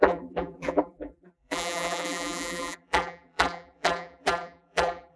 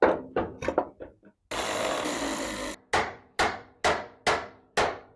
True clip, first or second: second